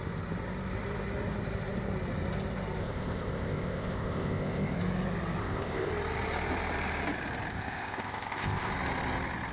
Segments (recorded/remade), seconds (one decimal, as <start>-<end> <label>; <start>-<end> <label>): 0.0-2.8 recorded; 2.8-4.8 remade; 4.8-5.4 recorded; 5.4-5.9 remade; 5.9-7.5 recorded; 7.5-8.7 remade; 8.7-9.5 recorded